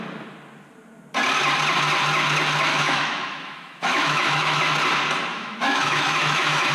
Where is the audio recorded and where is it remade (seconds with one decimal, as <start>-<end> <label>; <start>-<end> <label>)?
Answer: 0.0-2.7 recorded; 2.7-4.6 remade; 4.6-5.3 recorded; 5.3-6.7 remade